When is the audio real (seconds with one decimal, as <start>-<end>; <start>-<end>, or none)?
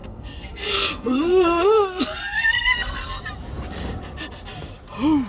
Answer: 3.2-5.3